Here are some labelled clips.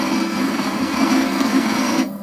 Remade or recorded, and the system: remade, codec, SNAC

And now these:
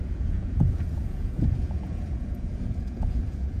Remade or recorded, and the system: remade, vocoder, Vocos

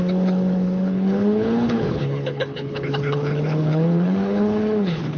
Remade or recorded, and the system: remade, codec, HILCodec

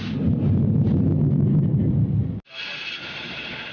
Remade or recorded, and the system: recorded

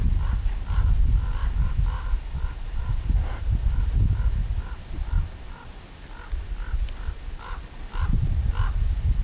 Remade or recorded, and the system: recorded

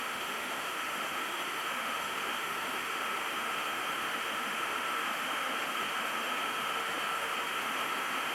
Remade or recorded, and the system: remade, autoencoder, DAC-VAE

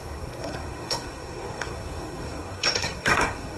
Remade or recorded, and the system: remade, codec, SNAC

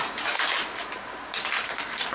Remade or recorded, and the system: recorded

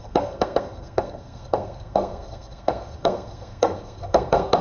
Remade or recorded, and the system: remade, codec, SNAC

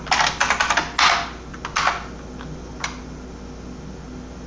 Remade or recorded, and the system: recorded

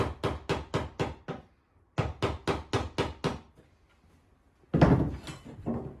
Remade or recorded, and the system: recorded